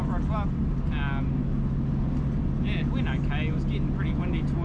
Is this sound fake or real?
real